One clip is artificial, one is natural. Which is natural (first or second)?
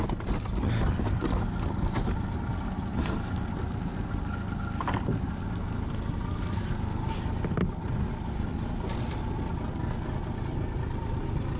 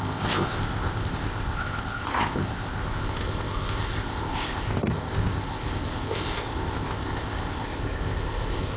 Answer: first